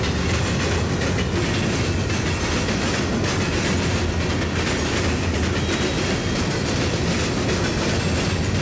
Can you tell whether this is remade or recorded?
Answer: recorded